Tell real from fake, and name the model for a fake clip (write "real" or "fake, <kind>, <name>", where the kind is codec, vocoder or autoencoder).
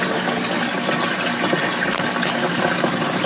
real